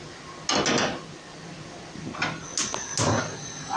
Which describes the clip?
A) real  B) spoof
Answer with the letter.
A